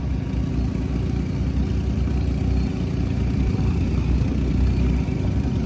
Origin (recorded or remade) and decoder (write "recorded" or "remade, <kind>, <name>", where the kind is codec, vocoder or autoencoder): recorded